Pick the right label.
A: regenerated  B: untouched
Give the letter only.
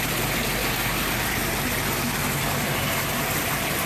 B